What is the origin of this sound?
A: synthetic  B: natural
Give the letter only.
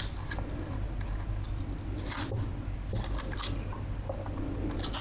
B